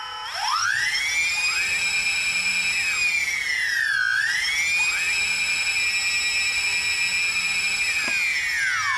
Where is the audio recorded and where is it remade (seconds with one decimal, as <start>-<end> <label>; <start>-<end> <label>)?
0.0-9.0 recorded